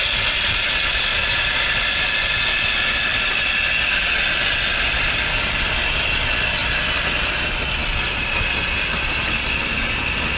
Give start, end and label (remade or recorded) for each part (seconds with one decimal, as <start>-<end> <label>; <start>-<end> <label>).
0.0-10.4 recorded